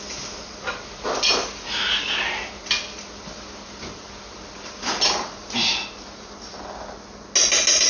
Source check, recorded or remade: recorded